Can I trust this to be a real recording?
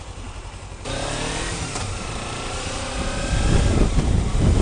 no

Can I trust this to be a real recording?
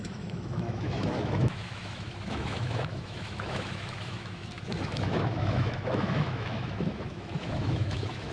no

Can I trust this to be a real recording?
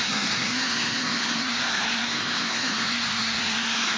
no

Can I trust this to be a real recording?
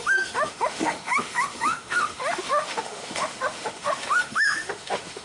no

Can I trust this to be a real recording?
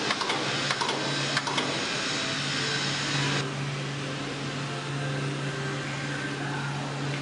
yes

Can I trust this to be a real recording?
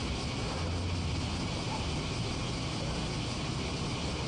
yes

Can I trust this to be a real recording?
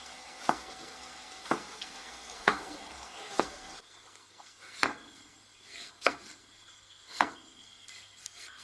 no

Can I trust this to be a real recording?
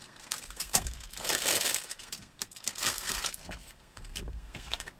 no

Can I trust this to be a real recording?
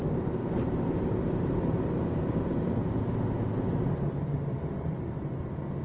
yes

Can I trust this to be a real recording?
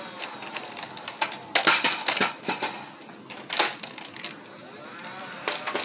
yes